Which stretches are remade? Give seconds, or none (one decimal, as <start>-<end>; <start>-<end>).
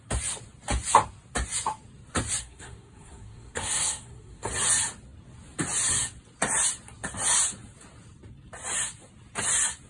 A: 2.4-4.5